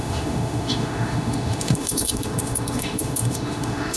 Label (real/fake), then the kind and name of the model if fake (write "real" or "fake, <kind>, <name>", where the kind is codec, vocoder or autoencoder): fake, autoencoder, DAC-VAE